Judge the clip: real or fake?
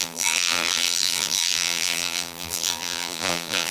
fake